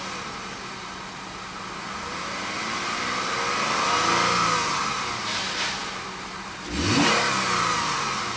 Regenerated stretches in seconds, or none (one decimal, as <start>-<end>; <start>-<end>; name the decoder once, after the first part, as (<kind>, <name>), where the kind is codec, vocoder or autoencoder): none

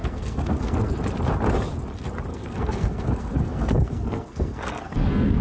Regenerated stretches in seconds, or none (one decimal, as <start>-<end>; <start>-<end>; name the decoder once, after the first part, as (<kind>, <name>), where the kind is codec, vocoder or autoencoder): 0.0-1.0 (codec, SNAC); 2.3-5.4

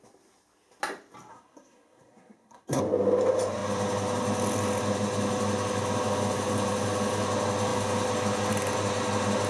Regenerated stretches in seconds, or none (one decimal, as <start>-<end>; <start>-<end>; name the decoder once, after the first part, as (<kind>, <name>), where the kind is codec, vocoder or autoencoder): 1.3-2.8 (codec, SNAC)

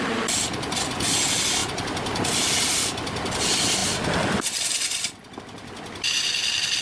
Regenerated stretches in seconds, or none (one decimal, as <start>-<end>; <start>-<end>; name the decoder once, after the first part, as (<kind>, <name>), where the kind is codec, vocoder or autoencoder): none

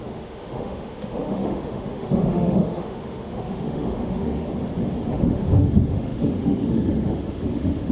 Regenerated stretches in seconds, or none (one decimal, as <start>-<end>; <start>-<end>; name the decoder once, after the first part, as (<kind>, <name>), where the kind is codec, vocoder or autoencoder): 0.0-4.5 (autoencoder, DAC-VAE); 5.1-7.9